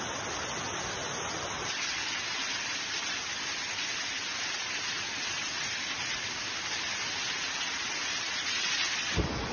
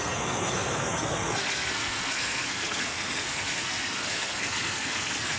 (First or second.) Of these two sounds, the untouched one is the first